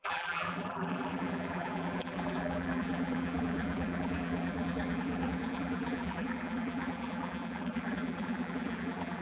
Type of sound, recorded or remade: remade